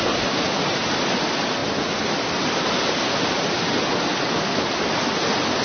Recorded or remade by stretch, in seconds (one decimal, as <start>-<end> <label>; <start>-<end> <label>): 0.0-5.6 recorded